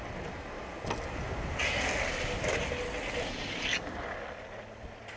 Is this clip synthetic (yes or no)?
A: no